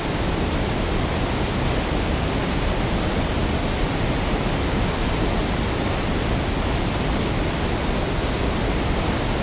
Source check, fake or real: real